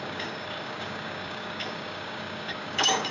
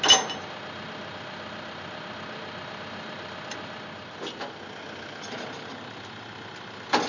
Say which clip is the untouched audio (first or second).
second